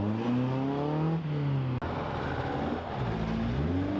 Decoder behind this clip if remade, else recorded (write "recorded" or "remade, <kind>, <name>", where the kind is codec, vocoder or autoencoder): recorded